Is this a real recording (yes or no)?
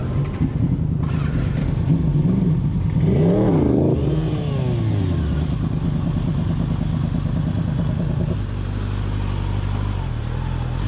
yes